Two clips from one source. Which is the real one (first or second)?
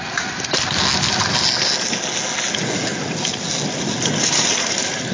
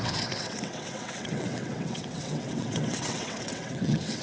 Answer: first